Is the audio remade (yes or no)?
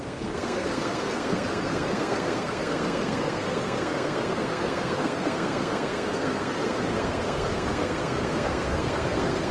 yes